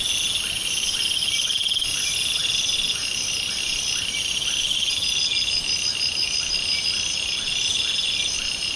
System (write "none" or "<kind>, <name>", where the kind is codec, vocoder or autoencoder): none